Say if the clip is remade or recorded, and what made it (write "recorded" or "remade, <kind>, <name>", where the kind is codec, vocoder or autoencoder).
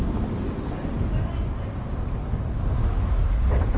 recorded